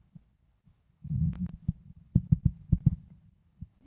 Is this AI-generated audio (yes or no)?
yes